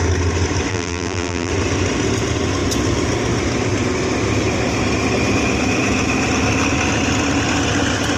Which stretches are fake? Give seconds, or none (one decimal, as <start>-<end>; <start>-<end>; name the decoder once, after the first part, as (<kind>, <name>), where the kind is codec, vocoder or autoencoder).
0.7-1.5 (vocoder, BigVGAN v2)